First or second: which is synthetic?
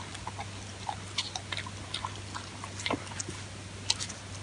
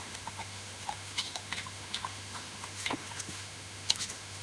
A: second